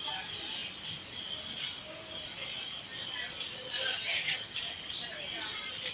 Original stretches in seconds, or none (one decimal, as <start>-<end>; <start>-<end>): 0.0-3.9; 4.5-5.9